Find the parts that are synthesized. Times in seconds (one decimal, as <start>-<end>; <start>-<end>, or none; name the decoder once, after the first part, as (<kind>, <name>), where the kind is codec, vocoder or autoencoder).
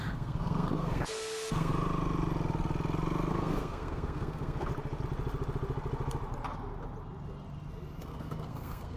0.0-1.7 (codec, SNAC); 3.3-4.7; 8.0-9.0